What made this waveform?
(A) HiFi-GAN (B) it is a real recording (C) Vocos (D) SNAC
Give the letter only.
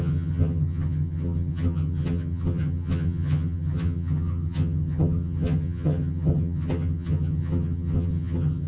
A